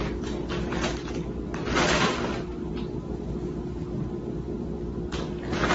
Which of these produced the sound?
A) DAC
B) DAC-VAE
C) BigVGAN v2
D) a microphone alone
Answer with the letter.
D